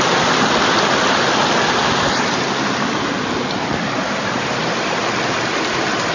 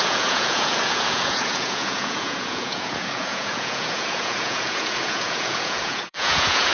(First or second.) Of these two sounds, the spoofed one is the second